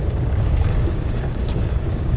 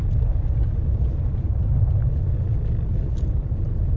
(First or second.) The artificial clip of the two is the first